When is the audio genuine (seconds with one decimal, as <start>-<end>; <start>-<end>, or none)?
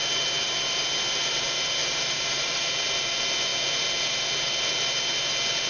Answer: 0.0-1.8; 2.7-5.7